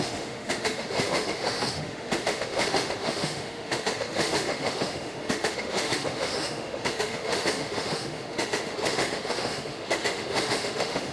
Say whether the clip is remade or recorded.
remade